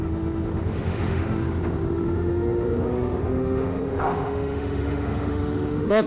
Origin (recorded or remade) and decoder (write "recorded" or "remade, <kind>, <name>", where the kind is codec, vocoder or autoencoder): remade, autoencoder, DAC-VAE